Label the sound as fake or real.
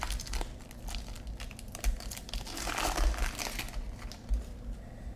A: real